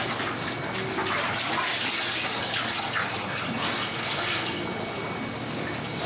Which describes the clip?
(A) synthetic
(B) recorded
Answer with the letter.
B